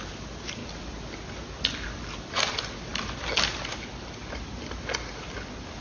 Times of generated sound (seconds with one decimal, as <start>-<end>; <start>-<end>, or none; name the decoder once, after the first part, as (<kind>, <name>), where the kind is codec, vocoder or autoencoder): none

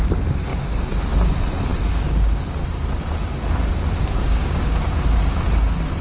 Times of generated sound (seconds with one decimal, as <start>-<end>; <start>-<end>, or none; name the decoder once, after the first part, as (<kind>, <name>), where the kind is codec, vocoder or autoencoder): 0.5-1.0 (codec, DAC); 4.2-4.8

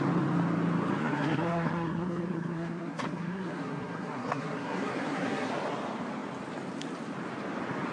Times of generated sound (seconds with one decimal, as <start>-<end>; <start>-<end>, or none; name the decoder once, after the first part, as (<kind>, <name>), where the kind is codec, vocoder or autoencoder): 1.0-5.5 (codec, SNAC)

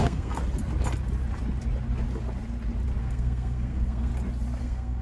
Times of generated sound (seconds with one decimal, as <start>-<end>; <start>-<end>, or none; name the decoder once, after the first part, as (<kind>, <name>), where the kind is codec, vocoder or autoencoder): 0.0-0.4 (codec, SNAC); 3.0-4.1; 4.6-5.0

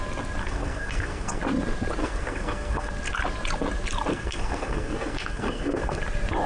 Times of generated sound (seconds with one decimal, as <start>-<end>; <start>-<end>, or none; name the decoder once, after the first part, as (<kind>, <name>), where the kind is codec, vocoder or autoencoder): 0.4-1.4 (codec, SNAC); 2.0-2.9; 4.1-6.0

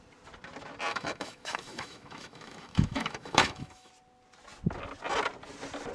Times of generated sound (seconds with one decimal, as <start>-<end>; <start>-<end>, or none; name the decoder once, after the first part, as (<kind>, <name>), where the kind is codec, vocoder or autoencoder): 0.9-3.9 (autoencoder, DAC-VAE)

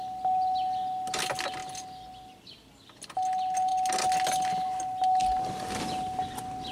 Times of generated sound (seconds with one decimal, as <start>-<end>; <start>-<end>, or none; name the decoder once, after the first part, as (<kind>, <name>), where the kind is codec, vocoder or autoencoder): none

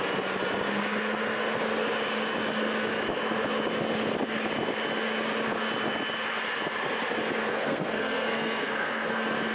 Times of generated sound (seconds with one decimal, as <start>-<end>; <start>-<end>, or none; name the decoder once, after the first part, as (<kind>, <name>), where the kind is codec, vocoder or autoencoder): 7.4-9.1 (codec, SNAC)